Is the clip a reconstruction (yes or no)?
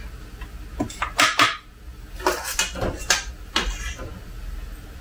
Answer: no